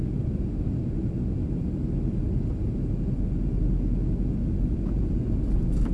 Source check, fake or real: real